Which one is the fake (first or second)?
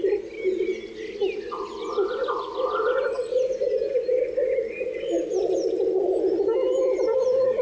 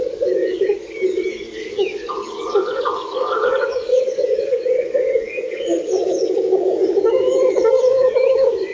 second